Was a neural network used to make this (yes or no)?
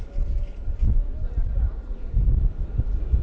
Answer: no